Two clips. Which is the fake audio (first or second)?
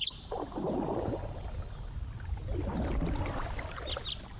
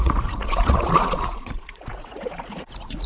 second